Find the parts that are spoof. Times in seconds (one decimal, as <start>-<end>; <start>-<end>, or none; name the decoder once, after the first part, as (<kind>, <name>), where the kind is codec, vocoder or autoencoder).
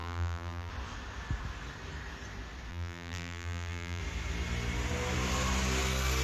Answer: 0.0-0.7 (vocoder, BigVGAN v2); 2.7-4.0